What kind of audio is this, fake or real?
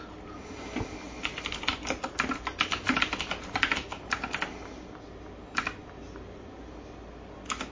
real